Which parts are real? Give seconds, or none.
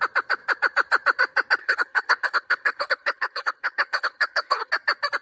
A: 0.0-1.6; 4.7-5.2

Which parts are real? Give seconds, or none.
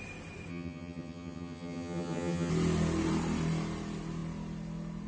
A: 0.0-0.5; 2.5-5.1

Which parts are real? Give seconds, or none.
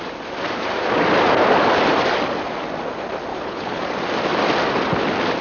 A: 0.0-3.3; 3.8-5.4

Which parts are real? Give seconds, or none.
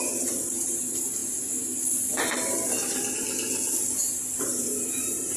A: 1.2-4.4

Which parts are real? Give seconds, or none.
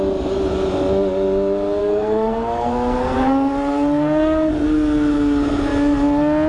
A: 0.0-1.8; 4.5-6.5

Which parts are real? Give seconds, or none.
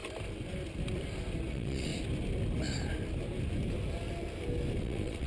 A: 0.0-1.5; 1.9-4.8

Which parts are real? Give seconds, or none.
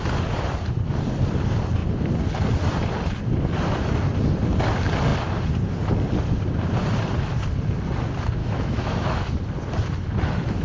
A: 0.0-8.4; 9.3-10.6